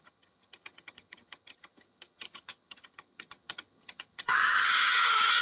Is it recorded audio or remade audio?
remade